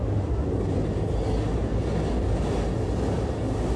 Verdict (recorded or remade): recorded